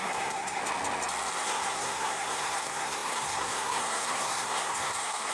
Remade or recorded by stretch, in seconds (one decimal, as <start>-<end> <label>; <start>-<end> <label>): 0.0-0.6 remade; 0.6-1.4 recorded; 1.4-5.3 remade

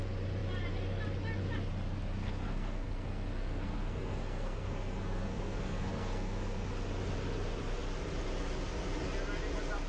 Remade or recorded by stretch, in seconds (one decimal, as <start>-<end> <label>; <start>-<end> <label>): 0.0-2.2 recorded; 2.2-6.7 remade; 6.7-9.9 recorded

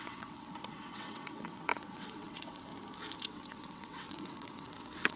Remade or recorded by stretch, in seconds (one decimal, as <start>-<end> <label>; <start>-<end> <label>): 0.0-2.7 remade; 2.7-3.2 recorded; 3.2-5.2 remade

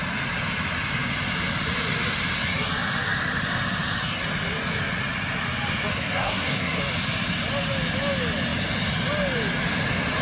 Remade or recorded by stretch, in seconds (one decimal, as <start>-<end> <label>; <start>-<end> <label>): 0.0-5.9 recorded; 5.9-6.8 remade; 6.8-10.2 recorded

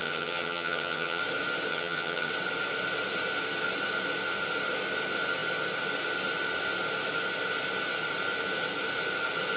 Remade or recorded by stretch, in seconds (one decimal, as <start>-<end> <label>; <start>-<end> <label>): 0.0-1.2 remade; 1.2-1.7 recorded; 1.7-2.3 remade; 2.3-9.6 recorded

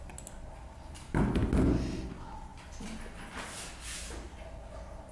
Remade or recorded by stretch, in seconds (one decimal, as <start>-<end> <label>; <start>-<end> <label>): 0.0-5.1 recorded

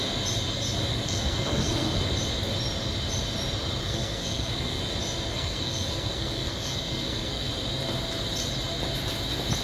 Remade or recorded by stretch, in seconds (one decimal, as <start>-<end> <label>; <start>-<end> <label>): 0.0-0.9 recorded; 0.9-2.0 remade; 2.0-3.8 recorded; 3.8-4.8 remade; 4.8-5.3 recorded; 5.3-7.5 remade; 7.5-9.6 recorded